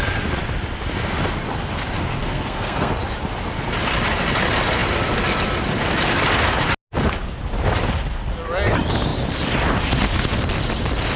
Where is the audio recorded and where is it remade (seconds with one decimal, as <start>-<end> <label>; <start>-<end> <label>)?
0.0-2.2 recorded; 2.2-2.9 remade; 2.9-11.2 recorded